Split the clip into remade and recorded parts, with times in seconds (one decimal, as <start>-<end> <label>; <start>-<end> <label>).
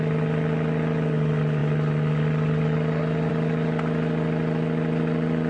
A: 0.0-5.5 recorded